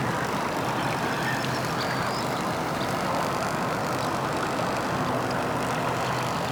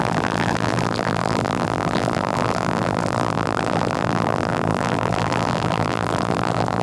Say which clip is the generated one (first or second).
second